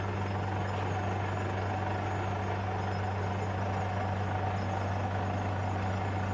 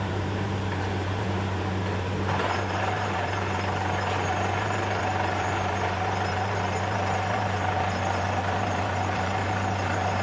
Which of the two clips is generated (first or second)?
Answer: second